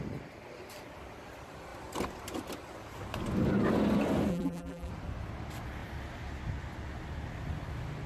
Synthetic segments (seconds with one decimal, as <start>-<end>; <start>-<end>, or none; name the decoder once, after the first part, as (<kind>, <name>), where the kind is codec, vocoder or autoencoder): 4.3-4.9 (vocoder, BigVGAN v2)